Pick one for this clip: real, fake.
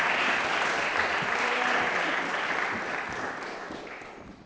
real